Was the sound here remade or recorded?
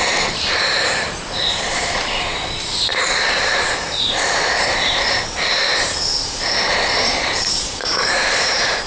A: remade